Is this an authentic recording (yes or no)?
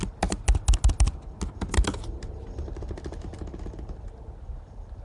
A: yes